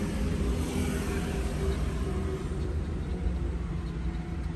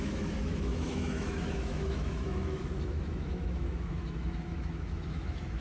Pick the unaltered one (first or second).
first